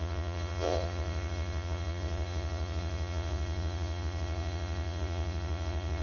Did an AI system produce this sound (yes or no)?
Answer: yes